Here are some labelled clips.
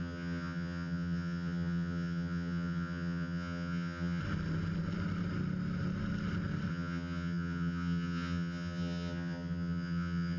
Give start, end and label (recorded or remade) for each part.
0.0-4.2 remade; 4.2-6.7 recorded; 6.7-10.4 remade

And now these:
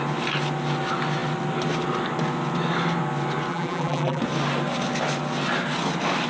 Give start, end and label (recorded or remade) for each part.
0.0-3.5 recorded; 3.5-4.2 remade; 4.2-6.3 recorded

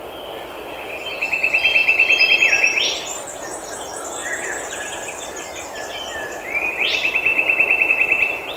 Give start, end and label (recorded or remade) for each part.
0.0-1.8 recorded; 1.8-3.0 remade; 3.0-4.2 recorded; 4.2-6.5 remade; 6.5-7.3 recorded; 7.3-7.9 remade; 7.9-8.6 recorded